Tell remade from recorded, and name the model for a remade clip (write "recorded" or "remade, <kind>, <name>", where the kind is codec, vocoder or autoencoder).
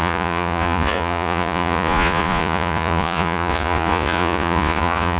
remade, vocoder, Vocos